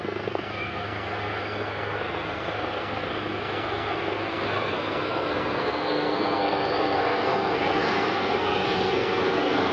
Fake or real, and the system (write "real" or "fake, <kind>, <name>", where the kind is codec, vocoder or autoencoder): fake, codec, SNAC